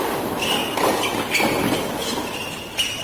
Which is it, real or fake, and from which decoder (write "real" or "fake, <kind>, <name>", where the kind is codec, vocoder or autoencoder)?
real